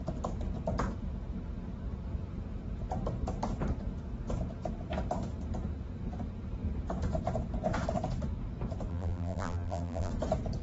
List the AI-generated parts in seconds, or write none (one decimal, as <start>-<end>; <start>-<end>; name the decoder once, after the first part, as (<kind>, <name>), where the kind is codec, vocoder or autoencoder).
8.9-10.1 (vocoder, BigVGAN v2)